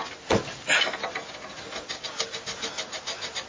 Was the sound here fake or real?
real